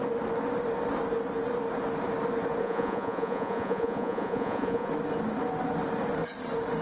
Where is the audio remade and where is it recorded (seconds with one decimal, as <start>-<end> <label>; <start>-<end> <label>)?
0.0-2.6 recorded; 2.6-4.9 remade; 4.9-6.8 recorded